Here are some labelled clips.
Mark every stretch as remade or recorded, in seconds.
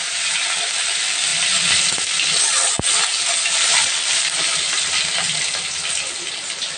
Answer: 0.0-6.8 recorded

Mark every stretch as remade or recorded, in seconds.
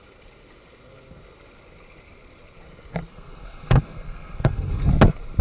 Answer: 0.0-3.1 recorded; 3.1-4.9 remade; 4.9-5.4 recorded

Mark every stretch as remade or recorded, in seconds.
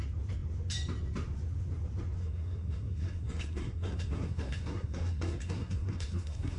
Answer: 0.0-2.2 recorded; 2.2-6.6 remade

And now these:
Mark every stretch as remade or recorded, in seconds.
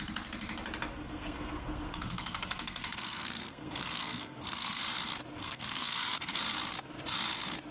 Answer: 0.0-0.9 recorded; 0.9-4.8 remade; 4.8-5.4 recorded; 5.4-6.4 remade; 6.4-7.7 recorded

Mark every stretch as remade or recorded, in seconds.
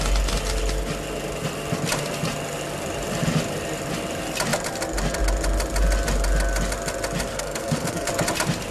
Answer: 0.0-7.3 recorded; 7.3-8.1 remade; 8.1-8.7 recorded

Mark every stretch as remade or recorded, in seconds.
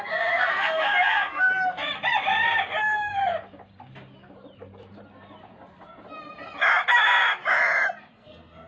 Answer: 0.0-1.5 remade; 1.5-2.8 recorded; 2.8-3.2 remade; 3.2-8.1 recorded; 8.1-8.7 remade